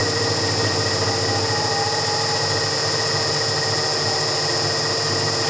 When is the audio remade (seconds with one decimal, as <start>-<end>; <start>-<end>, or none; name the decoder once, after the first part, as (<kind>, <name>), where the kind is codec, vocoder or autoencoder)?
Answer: none